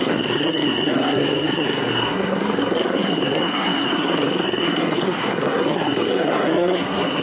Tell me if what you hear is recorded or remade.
remade